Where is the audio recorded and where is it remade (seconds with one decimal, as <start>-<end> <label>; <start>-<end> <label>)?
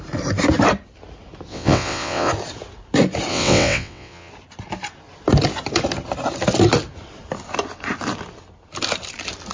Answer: 0.0-1.5 recorded; 1.5-2.3 remade; 2.3-3.3 recorded; 3.3-4.3 remade; 4.3-9.5 recorded